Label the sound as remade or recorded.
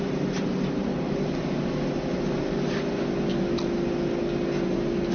recorded